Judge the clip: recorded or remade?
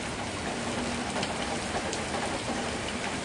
remade